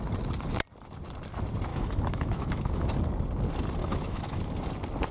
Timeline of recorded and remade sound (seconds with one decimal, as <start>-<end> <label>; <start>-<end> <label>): 0.0-1.7 recorded; 1.7-2.9 remade; 2.9-3.8 recorded; 3.8-4.4 remade; 4.4-5.1 recorded